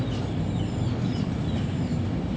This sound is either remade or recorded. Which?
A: recorded